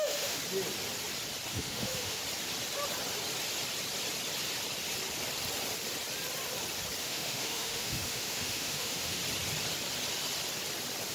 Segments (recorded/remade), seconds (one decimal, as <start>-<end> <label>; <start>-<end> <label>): 0.0-0.4 remade; 0.4-1.5 recorded; 1.5-2.2 remade; 2.2-7.0 recorded; 7.0-9.2 remade; 9.2-11.1 recorded